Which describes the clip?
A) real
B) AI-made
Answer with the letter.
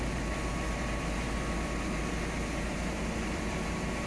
A